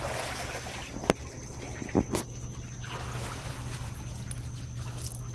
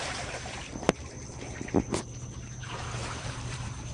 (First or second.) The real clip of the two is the first